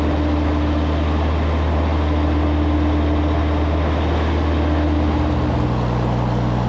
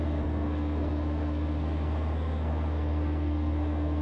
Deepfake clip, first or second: second